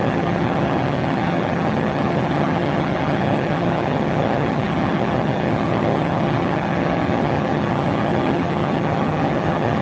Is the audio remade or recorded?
remade